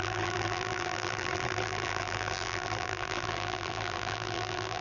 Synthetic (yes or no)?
yes